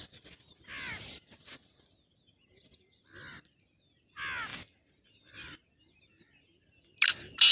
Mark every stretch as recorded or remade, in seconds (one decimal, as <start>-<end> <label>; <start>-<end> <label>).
0.0-7.5 recorded